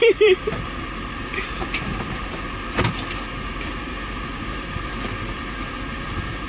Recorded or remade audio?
remade